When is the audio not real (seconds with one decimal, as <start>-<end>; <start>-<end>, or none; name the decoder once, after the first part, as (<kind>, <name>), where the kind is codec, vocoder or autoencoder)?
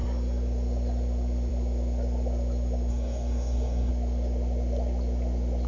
2.9-3.9 (codec, DAC)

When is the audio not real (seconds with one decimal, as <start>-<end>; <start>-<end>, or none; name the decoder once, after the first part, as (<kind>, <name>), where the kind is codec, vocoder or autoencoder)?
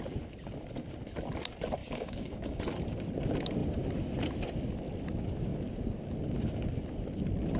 1.8-2.6 (codec, DAC)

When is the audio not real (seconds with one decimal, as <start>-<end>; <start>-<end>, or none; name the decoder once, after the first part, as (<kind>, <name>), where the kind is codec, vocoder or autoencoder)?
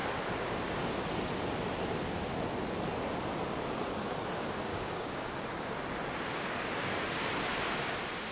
4.7-5.3 (codec, DAC)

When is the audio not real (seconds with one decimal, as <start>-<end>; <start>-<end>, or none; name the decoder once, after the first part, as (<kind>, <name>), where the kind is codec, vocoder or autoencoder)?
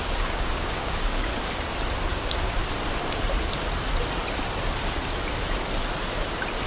0.0-1.3 (codec, DAC); 2.1-2.6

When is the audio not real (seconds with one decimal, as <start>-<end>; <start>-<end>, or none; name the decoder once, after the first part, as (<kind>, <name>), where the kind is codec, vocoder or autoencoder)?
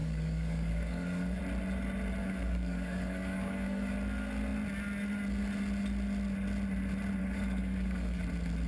0.0-1.4 (codec, DAC); 2.2-3.9; 7.2-8.2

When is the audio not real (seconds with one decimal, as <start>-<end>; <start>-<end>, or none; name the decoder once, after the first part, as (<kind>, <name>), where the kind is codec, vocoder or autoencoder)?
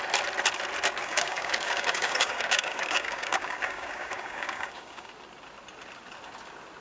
1.0-5.1 (codec, DAC)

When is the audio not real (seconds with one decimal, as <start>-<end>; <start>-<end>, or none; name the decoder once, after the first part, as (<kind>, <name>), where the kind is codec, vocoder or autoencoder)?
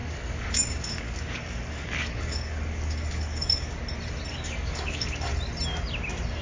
0.0-3.8 (codec, DAC); 4.3-5.3